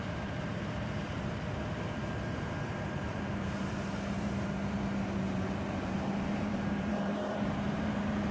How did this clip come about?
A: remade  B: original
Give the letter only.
A